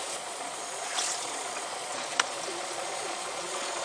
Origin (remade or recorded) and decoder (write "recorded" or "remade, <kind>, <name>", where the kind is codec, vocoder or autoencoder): remade, vocoder, Vocos